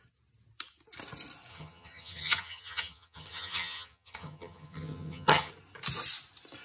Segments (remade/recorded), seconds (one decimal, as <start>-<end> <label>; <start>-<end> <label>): 0.0-1.5 recorded; 1.5-5.5 remade; 5.5-6.6 recorded